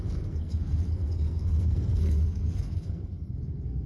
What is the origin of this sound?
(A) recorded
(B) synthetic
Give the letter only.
B